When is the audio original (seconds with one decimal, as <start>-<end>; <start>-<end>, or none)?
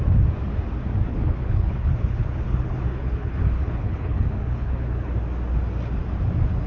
0.0-1.1; 5.1-6.7